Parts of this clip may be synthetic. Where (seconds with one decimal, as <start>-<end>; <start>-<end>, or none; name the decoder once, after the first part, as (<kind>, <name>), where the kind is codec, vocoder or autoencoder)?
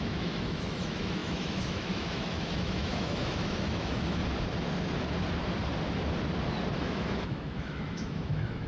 0.0-4.2 (autoencoder, DAC-VAE); 6.8-8.7